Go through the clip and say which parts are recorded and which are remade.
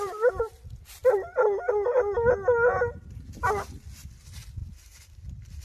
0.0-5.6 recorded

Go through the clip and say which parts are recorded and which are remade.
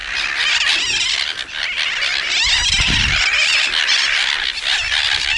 0.0-5.4 recorded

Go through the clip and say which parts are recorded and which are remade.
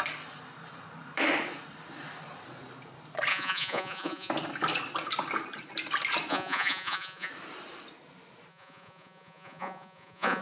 0.0-3.3 recorded; 3.3-4.3 remade; 4.3-6.3 recorded; 6.3-7.3 remade; 7.3-8.5 recorded; 8.5-10.4 remade